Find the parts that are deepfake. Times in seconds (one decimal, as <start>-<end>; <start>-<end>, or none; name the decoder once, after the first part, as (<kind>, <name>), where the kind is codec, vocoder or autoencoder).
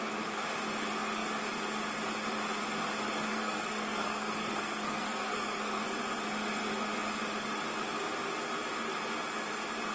3.3-5.8 (codec, SNAC)